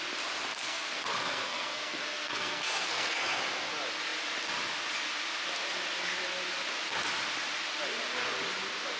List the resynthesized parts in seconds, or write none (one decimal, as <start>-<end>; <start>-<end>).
0.5-3.4